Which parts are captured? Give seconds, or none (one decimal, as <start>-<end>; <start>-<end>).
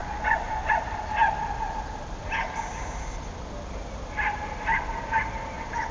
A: 0.7-5.9